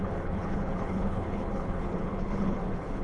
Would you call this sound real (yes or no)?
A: no